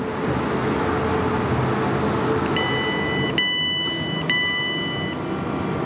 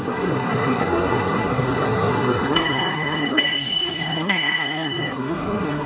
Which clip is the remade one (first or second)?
second